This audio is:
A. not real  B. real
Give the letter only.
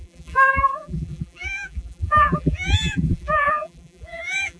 A